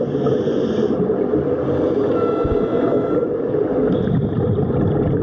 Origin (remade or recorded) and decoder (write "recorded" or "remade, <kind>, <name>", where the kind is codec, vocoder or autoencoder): recorded